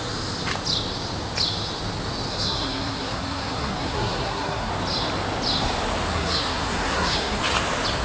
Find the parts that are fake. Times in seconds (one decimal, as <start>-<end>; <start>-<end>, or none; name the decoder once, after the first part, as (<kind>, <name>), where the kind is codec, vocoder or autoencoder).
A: 2.3-4.7 (codec, SNAC); 6.1-7.4